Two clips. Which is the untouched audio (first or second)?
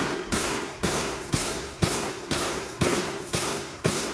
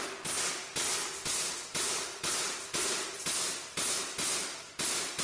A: second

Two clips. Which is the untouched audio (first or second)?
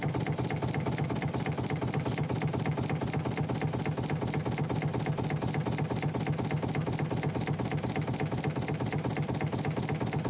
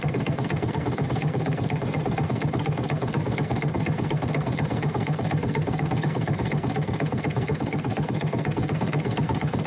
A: first